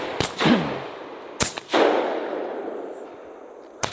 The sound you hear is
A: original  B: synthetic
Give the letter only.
A